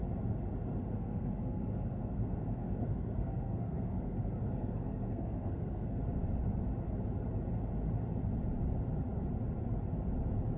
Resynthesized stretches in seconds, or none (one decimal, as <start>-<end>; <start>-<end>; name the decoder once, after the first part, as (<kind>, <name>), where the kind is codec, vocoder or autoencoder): 0.9-6.0 (codec, SNAC)